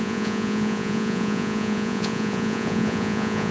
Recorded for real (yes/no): no